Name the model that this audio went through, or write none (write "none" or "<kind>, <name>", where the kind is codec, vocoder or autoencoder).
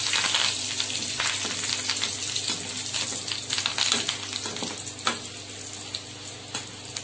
none